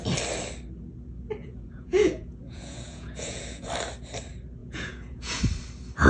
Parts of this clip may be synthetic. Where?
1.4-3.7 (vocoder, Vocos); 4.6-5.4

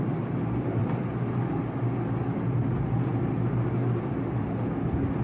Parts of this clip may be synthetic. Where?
none

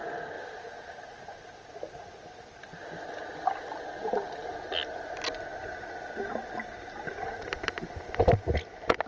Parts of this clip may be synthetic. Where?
5.5-7.1 (vocoder, BigVGAN v2)